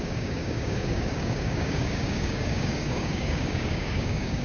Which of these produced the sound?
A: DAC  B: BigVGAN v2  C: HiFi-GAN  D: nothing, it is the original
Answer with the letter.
A